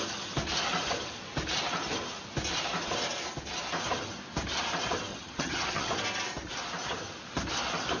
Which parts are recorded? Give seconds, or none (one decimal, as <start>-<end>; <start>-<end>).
0.0-5.1; 5.9-8.0